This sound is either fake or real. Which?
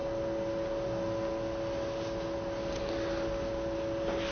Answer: real